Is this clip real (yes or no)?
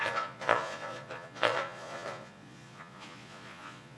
no